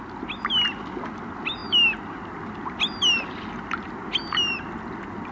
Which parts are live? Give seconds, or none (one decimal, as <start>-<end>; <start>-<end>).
0.0-5.3